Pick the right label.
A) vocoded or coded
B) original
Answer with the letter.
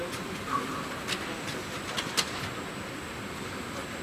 B